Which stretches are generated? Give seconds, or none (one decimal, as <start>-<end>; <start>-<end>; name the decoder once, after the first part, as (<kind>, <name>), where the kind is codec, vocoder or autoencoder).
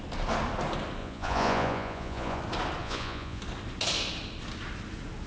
1.0-2.4 (vocoder, Vocos); 2.8-3.4